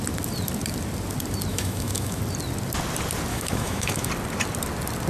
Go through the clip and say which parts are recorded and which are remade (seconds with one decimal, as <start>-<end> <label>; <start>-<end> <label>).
0.0-1.5 recorded; 1.5-2.2 remade; 2.2-3.3 recorded; 3.3-4.1 remade; 4.1-5.1 recorded